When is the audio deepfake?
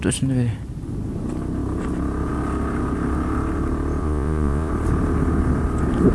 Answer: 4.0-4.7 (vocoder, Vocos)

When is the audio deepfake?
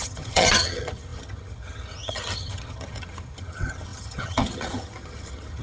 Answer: 0.0-5.6 (vocoder, HiFi-GAN)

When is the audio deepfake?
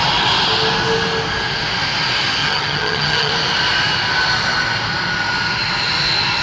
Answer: 2.4-3.3 (vocoder, HiFi-GAN)